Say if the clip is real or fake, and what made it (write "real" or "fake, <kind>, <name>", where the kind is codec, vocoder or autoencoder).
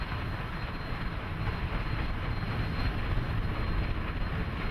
real